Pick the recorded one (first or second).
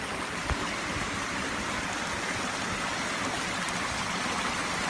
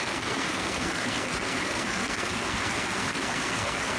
first